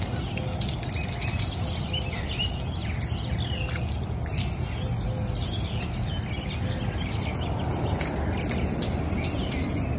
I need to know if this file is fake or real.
real